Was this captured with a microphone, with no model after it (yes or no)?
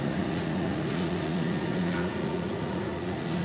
no